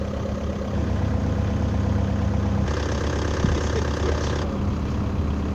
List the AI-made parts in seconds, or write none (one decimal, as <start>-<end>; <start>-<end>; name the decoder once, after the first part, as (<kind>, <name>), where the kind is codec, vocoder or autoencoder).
none